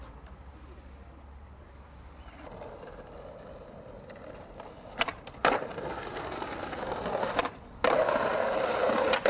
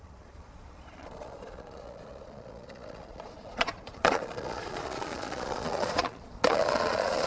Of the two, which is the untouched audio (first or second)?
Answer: first